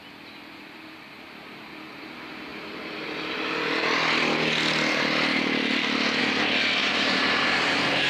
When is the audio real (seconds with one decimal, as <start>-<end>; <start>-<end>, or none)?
0.0-6.8